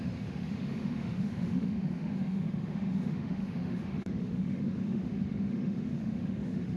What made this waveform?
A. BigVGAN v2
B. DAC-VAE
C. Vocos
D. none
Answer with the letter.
B